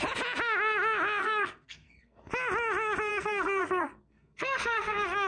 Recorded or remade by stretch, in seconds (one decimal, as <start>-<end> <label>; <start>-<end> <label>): 0.0-1.2 recorded; 1.2-2.3 remade; 2.3-3.1 recorded; 3.1-5.3 remade